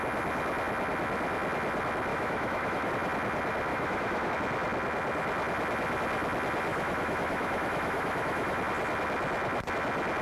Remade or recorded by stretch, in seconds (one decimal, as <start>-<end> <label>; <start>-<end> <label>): 0.0-2.1 recorded; 2.1-2.9 remade; 2.9-3.7 recorded; 3.7-4.3 remade; 4.3-6.7 recorded; 6.7-8.6 remade; 8.6-10.2 recorded